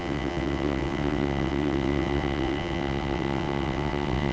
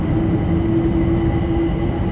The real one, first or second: second